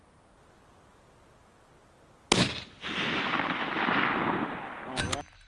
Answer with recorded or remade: recorded